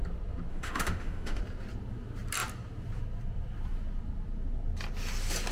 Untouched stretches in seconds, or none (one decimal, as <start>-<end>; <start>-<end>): 0.0-0.5; 1.4-5.5